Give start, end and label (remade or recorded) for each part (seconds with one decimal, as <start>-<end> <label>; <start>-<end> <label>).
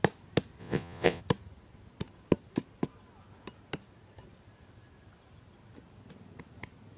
0.0-0.6 recorded; 0.6-1.2 remade; 1.2-7.0 recorded